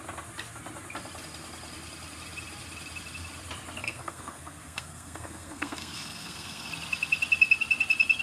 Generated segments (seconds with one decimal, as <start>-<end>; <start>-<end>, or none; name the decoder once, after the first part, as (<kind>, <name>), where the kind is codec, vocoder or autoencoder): 3.8-6.7 (codec, SNAC)